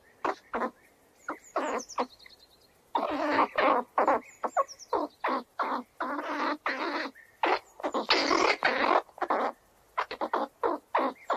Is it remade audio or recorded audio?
recorded